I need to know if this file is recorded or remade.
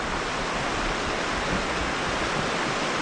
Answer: recorded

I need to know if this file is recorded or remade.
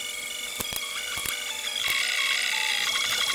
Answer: recorded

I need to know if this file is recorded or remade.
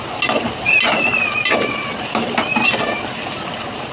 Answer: recorded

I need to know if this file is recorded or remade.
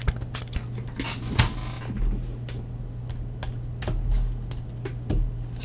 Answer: recorded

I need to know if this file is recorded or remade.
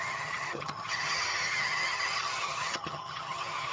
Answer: remade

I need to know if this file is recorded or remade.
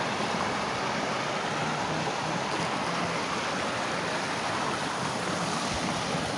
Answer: recorded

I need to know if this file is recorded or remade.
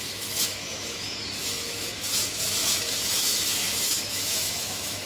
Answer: remade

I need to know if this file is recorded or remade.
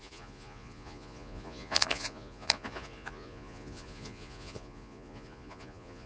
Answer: remade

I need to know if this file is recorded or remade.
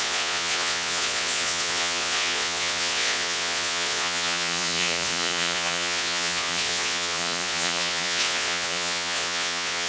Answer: remade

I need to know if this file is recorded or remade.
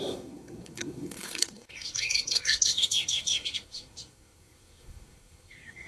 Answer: remade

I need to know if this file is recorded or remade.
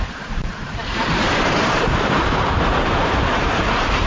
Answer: remade